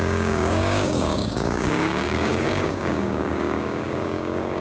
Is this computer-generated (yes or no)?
yes